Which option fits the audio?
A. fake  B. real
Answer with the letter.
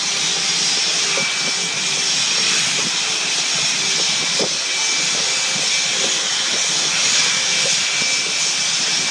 B